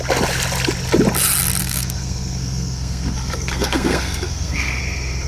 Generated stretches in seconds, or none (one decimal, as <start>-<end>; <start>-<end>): 1.6-4.8